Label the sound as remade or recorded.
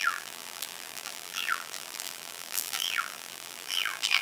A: remade